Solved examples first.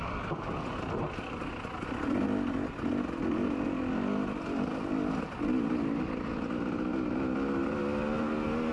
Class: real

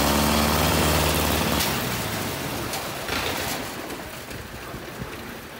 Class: real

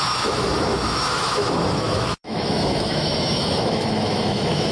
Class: fake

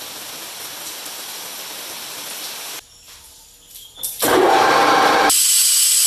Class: real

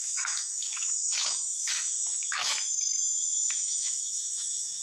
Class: fake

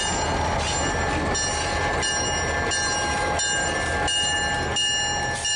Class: real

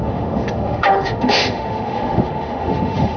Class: fake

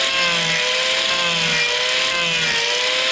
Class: real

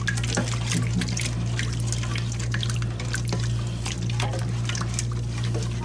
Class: real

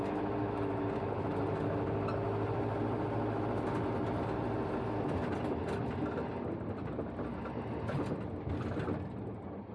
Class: real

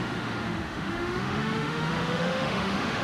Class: fake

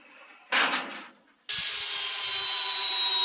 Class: real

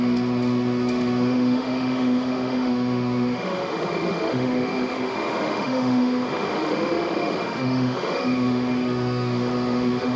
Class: fake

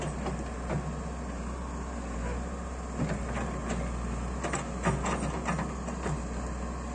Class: real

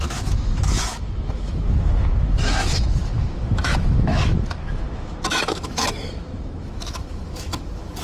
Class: fake